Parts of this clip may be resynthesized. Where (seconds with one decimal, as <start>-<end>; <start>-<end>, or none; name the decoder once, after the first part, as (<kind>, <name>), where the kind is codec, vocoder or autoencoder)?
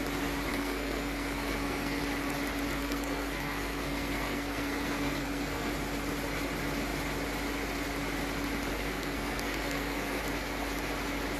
0.5-2.0 (codec, SNAC); 2.8-5.7; 8.7-10.2